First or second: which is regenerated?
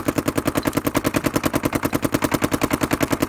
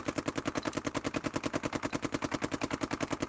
second